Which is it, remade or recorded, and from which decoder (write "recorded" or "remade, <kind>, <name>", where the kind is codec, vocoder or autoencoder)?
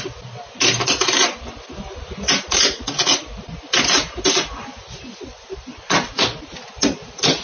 recorded